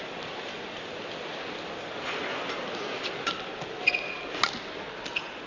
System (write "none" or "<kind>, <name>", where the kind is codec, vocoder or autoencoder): none